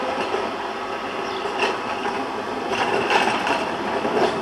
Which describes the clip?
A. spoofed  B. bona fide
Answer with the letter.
B